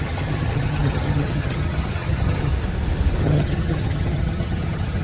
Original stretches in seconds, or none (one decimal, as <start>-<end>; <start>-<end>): 2.5-3.2

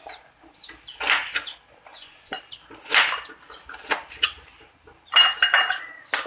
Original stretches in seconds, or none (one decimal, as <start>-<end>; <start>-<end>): 0.0-1.9; 2.4-6.3

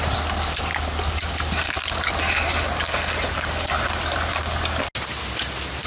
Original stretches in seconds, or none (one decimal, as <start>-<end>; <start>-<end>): 0.0-5.9

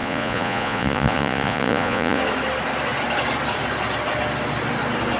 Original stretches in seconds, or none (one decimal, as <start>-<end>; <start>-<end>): 2.2-5.2

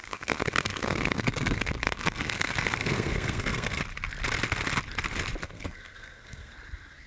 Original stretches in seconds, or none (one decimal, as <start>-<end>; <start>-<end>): 3.8-5.4; 6.5-7.1